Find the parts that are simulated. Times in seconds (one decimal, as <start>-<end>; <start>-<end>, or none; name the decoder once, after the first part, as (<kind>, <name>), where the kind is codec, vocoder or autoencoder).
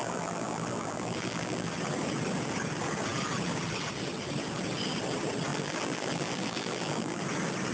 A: 0.0-1.7 (vocoder, BigVGAN v2); 5.5-7.2